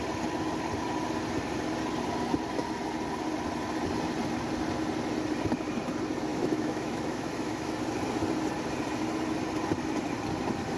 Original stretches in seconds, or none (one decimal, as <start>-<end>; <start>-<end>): 0.0-6.3; 7.7-10.8